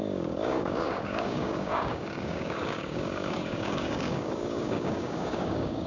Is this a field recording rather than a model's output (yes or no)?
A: no